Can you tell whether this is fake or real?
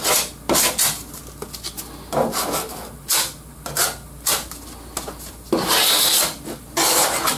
real